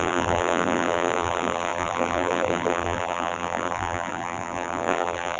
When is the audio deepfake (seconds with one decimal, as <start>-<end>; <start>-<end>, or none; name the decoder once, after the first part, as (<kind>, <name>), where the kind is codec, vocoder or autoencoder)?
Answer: 0.0-5.4 (vocoder, BigVGAN v2)